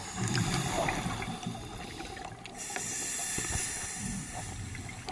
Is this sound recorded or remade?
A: recorded